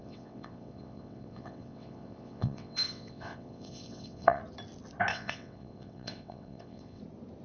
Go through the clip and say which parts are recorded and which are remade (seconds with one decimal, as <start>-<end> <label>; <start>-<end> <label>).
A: 0.0-4.4 remade; 4.4-5.1 recorded; 5.1-7.0 remade; 7.0-7.4 recorded